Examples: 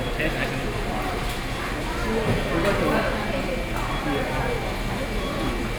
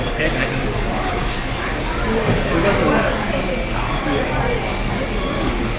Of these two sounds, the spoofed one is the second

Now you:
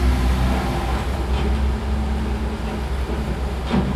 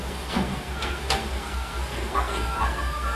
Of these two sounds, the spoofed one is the second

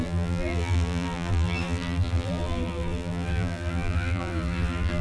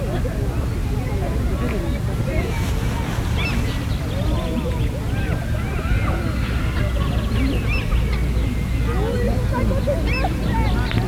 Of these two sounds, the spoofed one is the first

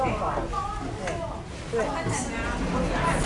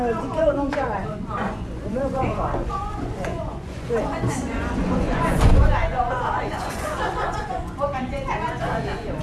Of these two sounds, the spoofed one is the second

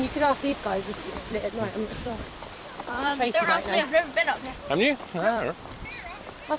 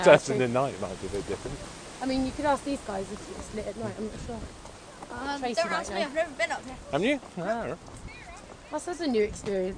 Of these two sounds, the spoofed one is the first